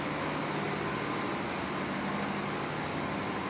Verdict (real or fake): real